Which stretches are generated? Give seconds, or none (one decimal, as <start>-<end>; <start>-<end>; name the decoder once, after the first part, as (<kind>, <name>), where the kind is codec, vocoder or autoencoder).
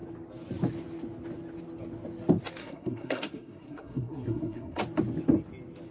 2.6-4.8 (codec, SNAC)